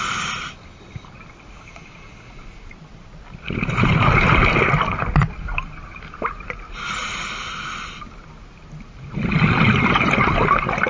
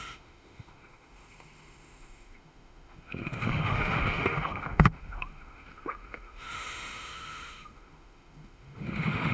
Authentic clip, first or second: first